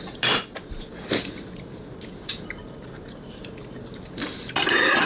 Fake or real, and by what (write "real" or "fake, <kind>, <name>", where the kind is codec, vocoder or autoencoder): real